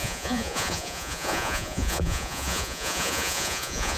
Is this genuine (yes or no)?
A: no